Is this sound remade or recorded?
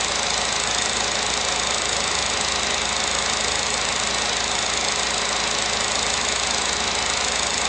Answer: recorded